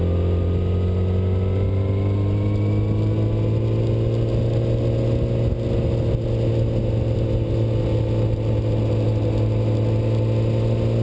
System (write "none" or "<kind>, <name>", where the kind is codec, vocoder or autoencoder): none